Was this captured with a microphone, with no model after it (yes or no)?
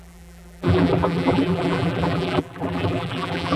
no